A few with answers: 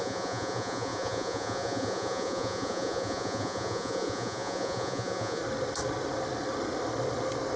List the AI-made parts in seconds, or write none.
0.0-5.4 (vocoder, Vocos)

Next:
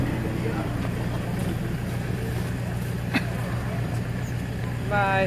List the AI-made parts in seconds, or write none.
none

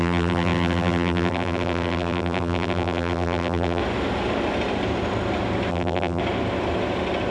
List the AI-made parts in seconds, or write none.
0.0-3.8 (vocoder, BigVGAN v2); 5.7-6.2

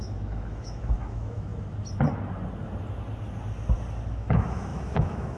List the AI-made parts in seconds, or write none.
0.0-1.5 (autoencoder, DAC-VAE); 4.1-5.4

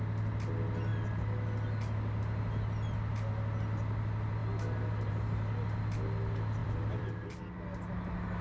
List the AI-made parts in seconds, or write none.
6.6-7.1 (vocoder, BigVGAN v2)

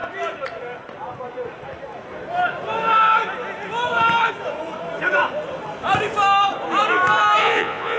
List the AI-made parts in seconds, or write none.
7.4-8.0 (vocoder, Vocos)

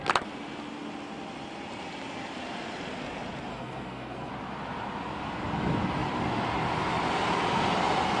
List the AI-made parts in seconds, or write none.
3.5-4.3 (codec, SNAC)

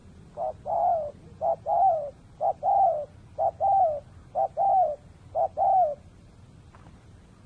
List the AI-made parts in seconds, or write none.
none